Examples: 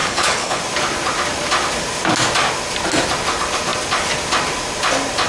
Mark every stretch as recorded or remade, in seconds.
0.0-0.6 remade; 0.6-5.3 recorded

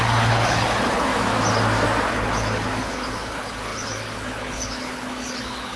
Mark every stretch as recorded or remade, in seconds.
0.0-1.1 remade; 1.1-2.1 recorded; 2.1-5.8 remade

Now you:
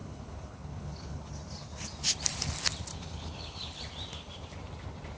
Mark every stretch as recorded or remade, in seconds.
0.0-1.3 remade; 1.3-2.9 recorded; 2.9-3.8 remade; 3.8-5.2 recorded